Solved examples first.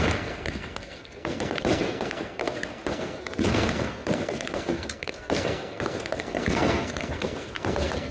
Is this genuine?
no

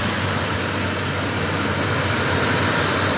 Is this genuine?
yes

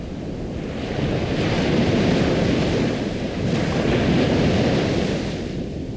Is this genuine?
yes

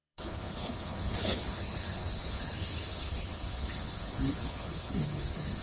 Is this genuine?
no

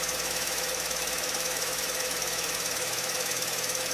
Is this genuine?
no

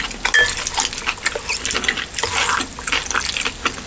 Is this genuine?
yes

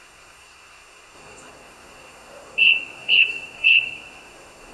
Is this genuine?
no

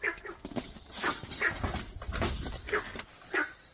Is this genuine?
yes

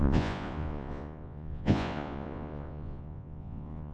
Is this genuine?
no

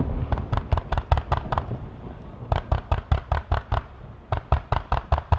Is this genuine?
yes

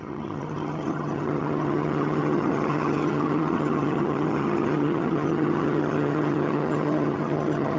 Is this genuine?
no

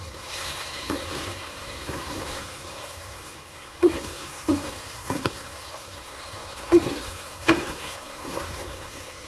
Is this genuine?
no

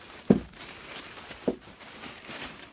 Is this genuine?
yes